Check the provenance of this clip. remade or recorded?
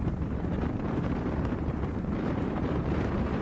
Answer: remade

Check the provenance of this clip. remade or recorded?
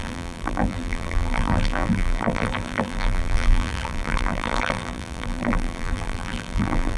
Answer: remade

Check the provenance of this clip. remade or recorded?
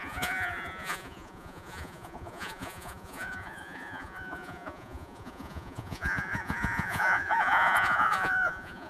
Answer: remade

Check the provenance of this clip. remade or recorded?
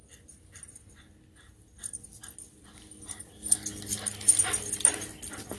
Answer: recorded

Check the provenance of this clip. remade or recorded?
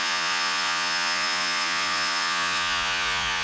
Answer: remade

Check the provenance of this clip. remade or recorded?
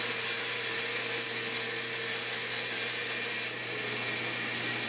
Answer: recorded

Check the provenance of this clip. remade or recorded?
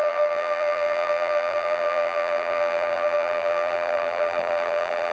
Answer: remade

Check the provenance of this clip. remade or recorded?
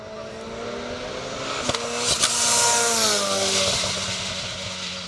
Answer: recorded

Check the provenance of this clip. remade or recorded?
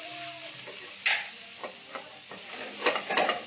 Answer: recorded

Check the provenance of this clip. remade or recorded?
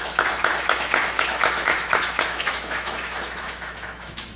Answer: remade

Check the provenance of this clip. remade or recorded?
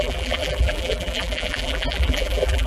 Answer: remade